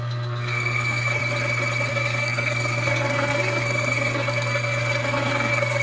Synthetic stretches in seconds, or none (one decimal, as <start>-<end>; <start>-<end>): 0.0-1.2; 1.9-5.8